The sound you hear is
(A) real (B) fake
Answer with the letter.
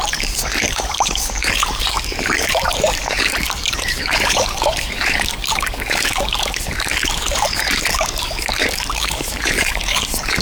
B